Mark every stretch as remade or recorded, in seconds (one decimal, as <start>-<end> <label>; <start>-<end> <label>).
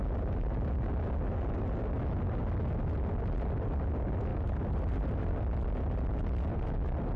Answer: 0.0-4.3 recorded; 4.3-5.3 remade; 5.3-7.2 recorded